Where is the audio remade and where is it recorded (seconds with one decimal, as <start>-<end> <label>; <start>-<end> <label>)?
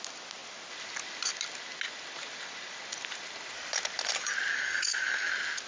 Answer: 0.0-4.5 recorded; 4.5-5.3 remade; 5.3-5.7 recorded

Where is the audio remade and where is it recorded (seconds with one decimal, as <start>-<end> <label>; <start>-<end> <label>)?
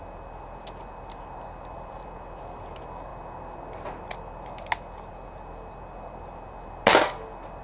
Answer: 0.0-7.6 recorded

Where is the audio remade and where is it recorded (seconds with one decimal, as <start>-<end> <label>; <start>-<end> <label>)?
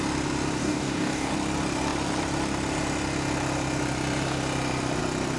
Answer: 0.0-0.6 recorded; 0.6-1.3 remade; 1.3-5.4 recorded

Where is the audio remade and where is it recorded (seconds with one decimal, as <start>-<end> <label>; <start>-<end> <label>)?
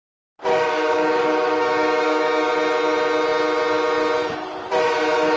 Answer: 0.0-0.5 recorded; 0.5-2.5 remade; 2.5-5.4 recorded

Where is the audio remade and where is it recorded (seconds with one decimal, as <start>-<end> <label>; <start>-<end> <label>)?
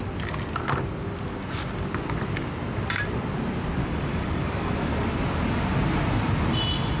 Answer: 0.0-3.8 recorded; 3.8-4.7 remade; 4.7-7.0 recorded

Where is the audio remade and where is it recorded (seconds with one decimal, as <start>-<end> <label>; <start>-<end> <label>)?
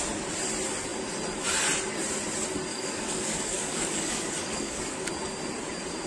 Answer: 0.0-2.7 recorded; 2.7-5.1 remade; 5.1-6.1 recorded